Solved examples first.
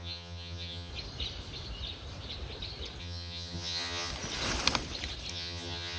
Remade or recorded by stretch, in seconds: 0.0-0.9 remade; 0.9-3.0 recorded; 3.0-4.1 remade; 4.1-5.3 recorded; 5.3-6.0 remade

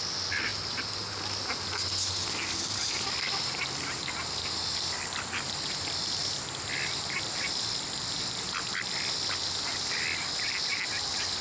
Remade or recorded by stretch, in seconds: 0.0-11.4 recorded

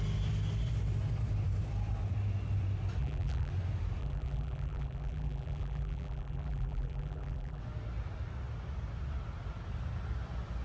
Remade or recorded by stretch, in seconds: 0.0-3.0 recorded; 3.0-3.5 remade; 3.5-4.0 recorded; 4.0-7.6 remade; 7.6-10.6 recorded

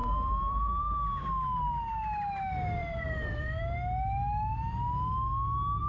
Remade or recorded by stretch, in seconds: 0.0-0.8 remade; 0.8-2.8 recorded; 2.8-3.6 remade; 3.6-5.9 recorded

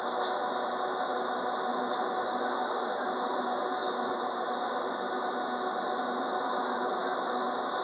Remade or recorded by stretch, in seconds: 0.0-1.1 recorded; 1.1-3.4 remade; 3.4-3.8 recorded; 3.8-5.3 remade; 5.3-7.8 recorded